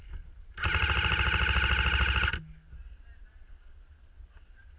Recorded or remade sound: recorded